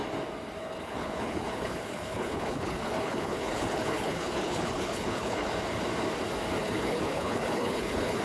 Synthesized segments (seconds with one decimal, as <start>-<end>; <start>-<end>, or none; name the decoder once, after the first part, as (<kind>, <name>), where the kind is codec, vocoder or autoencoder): 0.6-5.5 (codec, HILCodec); 6.6-8.2

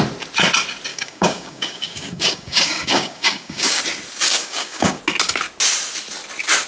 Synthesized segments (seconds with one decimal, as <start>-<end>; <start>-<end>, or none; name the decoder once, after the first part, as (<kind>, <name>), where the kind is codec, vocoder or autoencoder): 0.9-3.8 (codec, DAC); 4.4-5.0

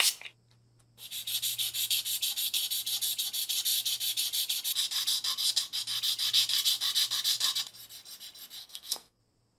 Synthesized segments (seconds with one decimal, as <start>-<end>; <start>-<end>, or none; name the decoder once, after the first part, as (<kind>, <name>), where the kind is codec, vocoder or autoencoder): 8.6-9.2 (codec, SNAC)

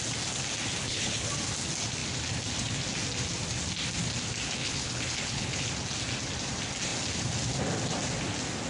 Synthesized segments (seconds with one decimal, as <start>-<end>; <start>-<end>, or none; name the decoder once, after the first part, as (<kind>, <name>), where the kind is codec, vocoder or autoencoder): 0.8-1.3 (codec, HILCodec); 4.6-5.7

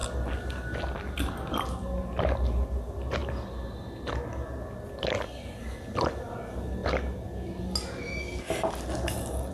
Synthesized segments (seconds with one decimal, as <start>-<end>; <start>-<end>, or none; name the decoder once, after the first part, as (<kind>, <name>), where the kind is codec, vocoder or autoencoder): none